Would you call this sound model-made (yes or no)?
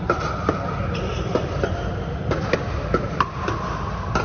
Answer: yes